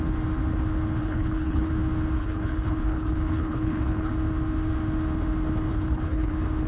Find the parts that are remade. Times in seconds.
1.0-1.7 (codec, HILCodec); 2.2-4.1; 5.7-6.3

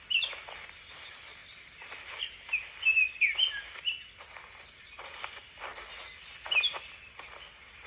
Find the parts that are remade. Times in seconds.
none

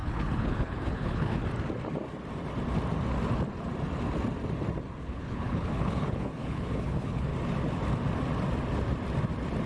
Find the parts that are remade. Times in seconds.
0.0-1.4 (codec, HILCodec); 5.0-7.3

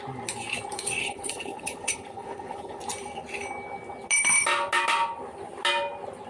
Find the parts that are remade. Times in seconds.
1.0-2.8 (codec, HILCodec)

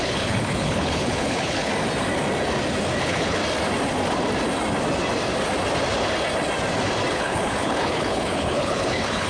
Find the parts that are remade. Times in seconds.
0.0-1.7 (codec, HILCodec); 3.0-3.4; 7.1-9.3

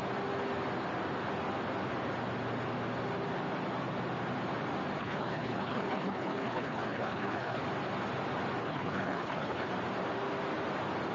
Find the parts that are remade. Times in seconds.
5.0-7.6 (codec, HILCodec); 8.6-9.7